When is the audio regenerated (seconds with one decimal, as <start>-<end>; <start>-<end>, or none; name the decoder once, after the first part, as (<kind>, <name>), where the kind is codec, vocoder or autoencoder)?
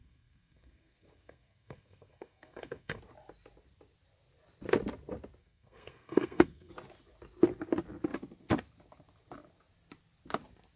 0.0-3.0 (codec, SNAC); 5.4-6.7